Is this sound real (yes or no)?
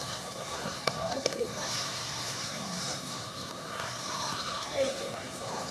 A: no